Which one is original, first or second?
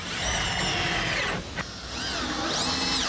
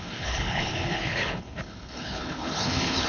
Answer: first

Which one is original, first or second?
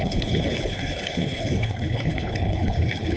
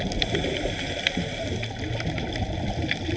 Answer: second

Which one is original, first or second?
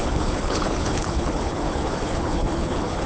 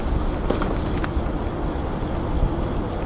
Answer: second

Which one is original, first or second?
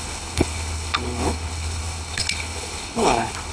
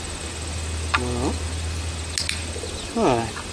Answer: second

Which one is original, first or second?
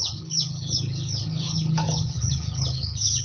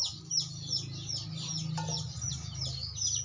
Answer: second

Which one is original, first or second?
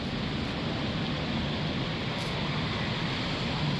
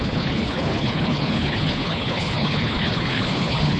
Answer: first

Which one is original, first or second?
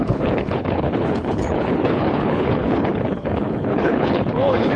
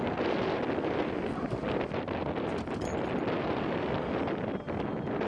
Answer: second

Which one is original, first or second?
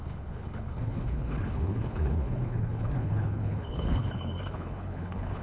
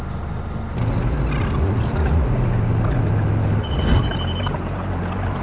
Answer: second